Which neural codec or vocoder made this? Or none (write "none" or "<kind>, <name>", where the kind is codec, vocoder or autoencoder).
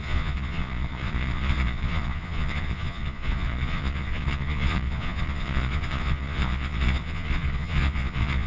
vocoder, Vocos